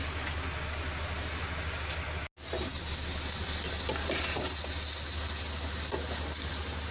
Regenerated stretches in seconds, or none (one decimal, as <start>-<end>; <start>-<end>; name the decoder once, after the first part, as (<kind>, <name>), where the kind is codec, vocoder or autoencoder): none